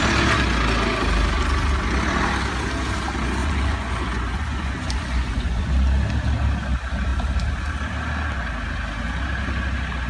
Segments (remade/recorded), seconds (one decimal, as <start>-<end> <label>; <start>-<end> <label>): 0.0-3.4 recorded; 3.4-5.7 remade; 5.7-10.1 recorded